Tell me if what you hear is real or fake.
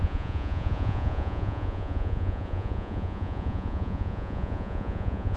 fake